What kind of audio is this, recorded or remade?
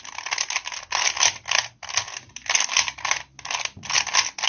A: recorded